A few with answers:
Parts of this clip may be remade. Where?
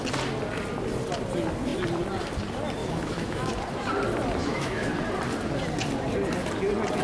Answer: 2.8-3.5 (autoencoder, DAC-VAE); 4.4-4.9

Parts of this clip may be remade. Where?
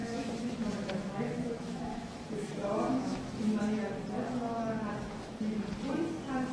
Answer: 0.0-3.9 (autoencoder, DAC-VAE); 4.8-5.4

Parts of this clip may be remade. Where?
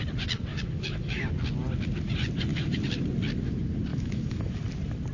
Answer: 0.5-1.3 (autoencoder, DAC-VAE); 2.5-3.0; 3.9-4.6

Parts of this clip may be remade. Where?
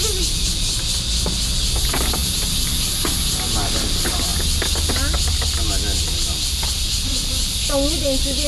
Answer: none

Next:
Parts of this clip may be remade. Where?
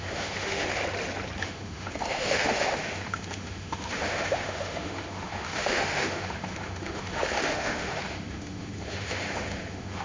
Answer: 0.0-0.8 (autoencoder, DAC-VAE); 1.4-10.0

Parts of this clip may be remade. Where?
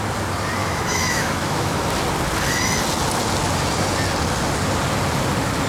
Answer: 0.6-1.8 (autoencoder, DAC-VAE)